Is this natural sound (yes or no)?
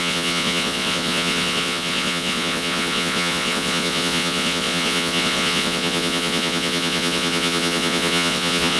no